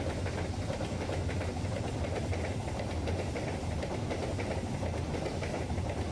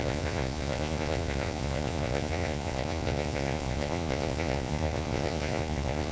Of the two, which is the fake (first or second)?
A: second